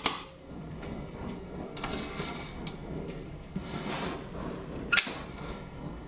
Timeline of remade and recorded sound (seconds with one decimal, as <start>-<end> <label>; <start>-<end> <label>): 0.0-0.4 recorded; 0.4-3.9 remade; 3.9-5.3 recorded; 5.3-6.1 remade